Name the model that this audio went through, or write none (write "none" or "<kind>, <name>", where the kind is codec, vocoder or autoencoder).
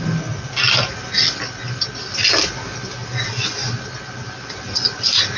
none